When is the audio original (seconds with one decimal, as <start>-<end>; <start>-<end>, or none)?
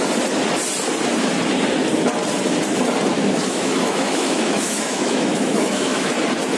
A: 0.0-3.1; 6.1-6.6